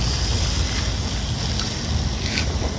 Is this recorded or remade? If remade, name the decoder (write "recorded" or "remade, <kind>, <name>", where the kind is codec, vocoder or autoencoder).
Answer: recorded